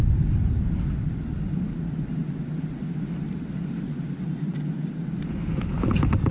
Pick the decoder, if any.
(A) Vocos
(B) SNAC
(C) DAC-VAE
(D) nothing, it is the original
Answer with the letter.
D